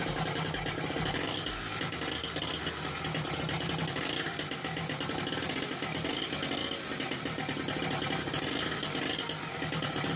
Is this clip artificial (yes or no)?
no